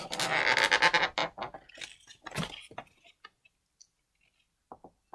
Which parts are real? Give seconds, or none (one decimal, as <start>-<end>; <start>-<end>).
0.0-5.1